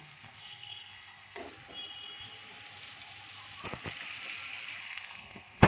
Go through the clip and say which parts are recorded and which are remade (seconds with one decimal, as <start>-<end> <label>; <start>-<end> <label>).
0.0-1.4 remade; 1.4-4.8 recorded; 4.8-5.7 remade